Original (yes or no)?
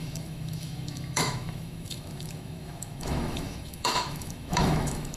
no